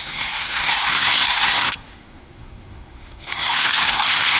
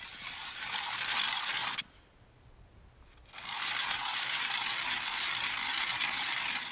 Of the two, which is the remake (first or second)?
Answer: first